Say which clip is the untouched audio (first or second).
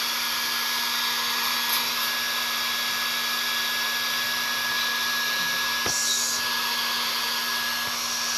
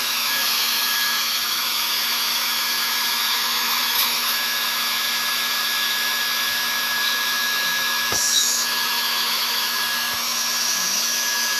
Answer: first